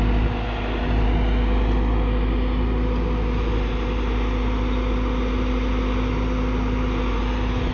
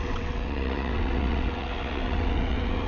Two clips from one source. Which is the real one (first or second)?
first